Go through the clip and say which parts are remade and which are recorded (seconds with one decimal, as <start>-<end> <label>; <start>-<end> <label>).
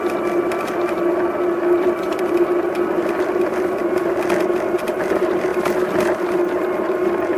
0.0-7.4 recorded